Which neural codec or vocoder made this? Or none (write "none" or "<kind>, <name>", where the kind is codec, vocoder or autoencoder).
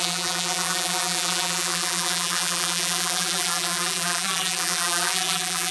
vocoder, BigVGAN v2